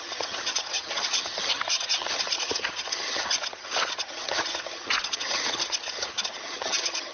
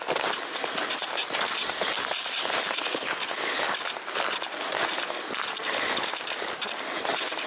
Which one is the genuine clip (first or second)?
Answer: second